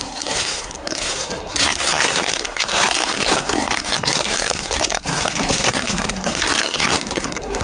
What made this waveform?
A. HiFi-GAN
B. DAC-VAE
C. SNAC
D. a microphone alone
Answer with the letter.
C